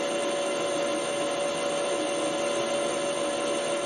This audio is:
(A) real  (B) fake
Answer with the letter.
A